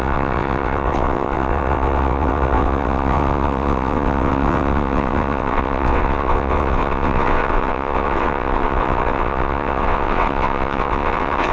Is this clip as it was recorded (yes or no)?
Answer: no